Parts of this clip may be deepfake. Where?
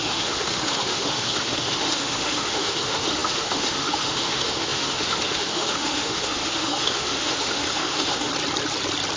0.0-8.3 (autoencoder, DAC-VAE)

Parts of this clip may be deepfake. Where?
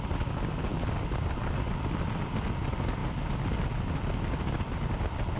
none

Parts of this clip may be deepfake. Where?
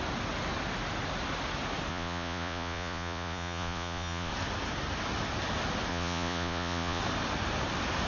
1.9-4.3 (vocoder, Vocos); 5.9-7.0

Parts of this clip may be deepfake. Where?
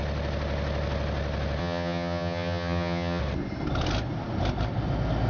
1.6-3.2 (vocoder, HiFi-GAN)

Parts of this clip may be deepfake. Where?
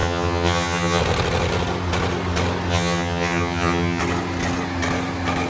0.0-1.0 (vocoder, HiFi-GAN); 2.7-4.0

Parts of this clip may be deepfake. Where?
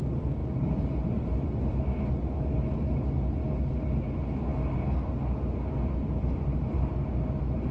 0.4-1.7 (vocoder, BigVGAN v2)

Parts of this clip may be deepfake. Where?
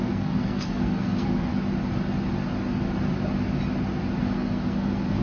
0.0-1.5 (codec, SNAC); 4.2-5.2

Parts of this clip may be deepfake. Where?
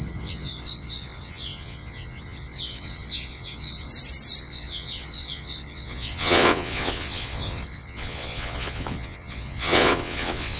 0.0-3.9 (vocoder, WaveNeXt); 4.4-10.6